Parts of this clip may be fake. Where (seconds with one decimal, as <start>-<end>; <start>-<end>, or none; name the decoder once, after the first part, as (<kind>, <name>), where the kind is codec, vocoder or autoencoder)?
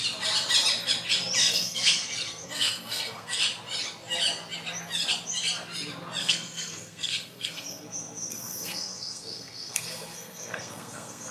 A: 1.4-3.4 (codec, SNAC); 6.2-11.3